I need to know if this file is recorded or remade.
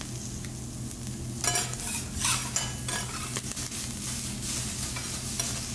recorded